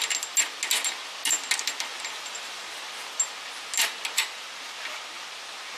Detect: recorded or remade recorded